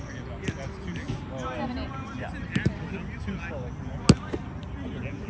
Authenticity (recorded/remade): recorded